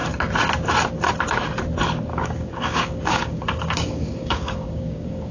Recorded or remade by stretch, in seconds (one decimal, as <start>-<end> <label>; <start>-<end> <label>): 0.0-2.1 recorded; 2.1-5.3 remade